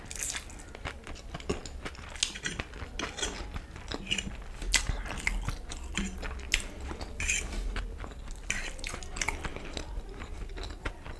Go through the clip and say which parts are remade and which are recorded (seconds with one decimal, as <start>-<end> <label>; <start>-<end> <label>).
0.0-11.2 recorded